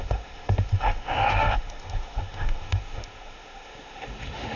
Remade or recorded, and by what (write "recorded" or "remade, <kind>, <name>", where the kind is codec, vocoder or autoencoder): remade, autoencoder, DAC-VAE